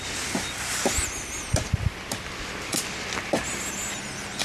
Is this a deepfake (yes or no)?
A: no